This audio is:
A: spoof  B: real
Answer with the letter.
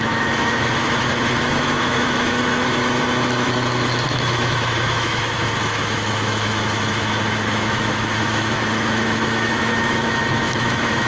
A